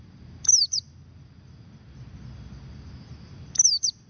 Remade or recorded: recorded